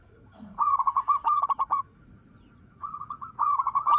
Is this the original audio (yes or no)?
no